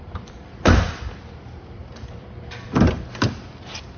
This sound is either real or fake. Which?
fake